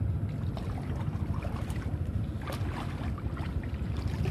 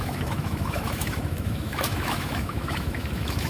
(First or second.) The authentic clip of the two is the first